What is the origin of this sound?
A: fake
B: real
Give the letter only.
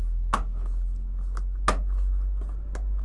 B